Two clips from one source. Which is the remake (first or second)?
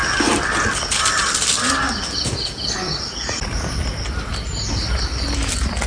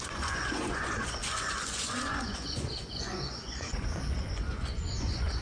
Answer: second